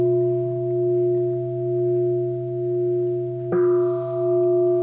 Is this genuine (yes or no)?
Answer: yes